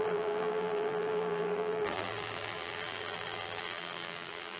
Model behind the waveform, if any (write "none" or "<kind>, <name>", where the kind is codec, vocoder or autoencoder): vocoder, BigVGAN v2